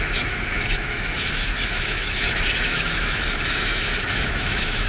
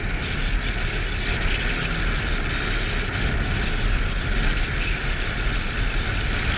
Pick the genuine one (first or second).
second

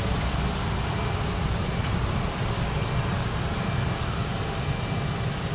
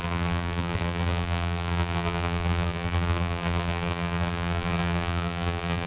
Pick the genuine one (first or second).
first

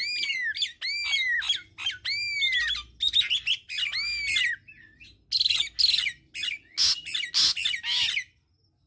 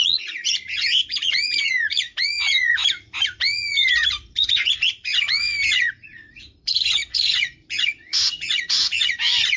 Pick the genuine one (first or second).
first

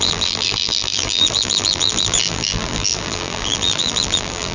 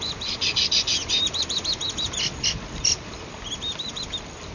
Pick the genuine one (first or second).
second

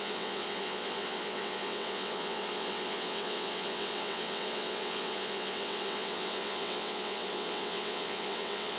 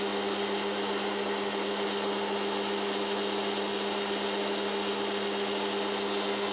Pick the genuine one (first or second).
second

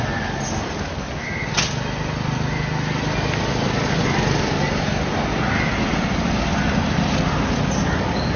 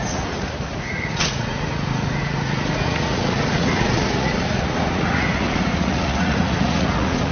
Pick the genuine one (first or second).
first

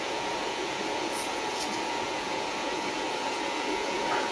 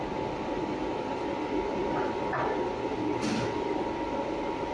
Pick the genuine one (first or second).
second